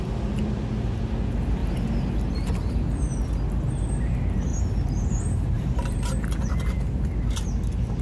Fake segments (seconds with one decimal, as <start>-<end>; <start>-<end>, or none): 1.6-2.3; 4.5-7.0